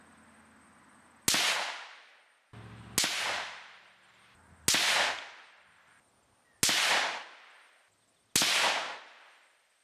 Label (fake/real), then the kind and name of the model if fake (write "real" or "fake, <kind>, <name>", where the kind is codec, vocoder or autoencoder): real